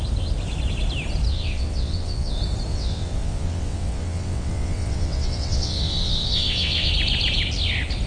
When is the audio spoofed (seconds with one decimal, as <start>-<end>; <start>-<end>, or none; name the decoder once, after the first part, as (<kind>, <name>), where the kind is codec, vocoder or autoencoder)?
1.3-2.3 (vocoder, WaveNeXt); 2.7-6.9